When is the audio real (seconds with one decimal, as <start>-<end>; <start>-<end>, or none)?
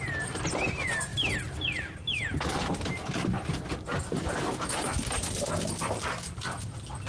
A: 0.0-7.1